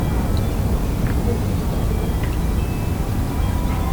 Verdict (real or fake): real